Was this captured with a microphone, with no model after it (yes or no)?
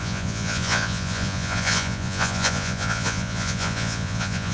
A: no